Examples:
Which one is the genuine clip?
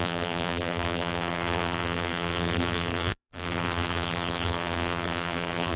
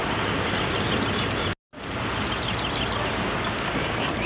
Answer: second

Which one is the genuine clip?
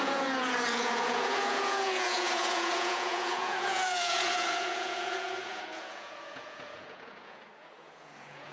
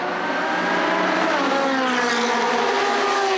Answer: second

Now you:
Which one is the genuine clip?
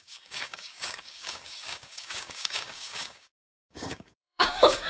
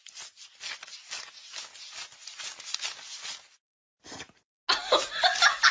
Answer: second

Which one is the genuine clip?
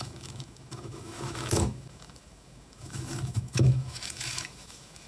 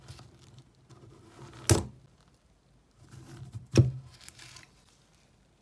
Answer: second